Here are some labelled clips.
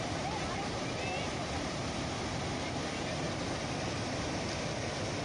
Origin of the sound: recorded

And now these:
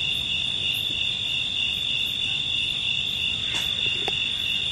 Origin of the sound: recorded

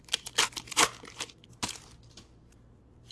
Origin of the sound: remade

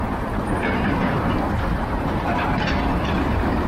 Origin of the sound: remade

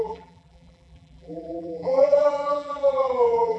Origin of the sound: remade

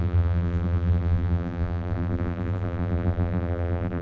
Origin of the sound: remade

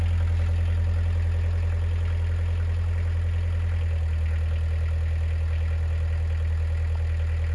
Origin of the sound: recorded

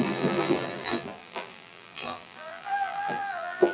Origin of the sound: remade